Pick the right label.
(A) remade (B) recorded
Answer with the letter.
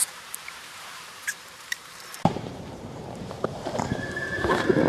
A